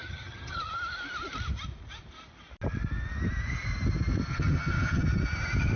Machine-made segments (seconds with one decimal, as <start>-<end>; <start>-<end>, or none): 0.0-0.7; 4.3-5.0